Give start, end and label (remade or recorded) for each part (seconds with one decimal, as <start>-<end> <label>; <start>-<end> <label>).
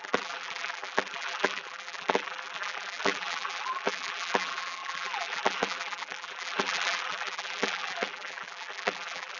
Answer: 0.0-9.4 remade